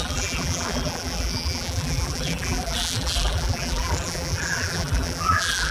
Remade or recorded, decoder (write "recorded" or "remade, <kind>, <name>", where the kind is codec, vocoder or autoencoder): remade, vocoder, BigVGAN v2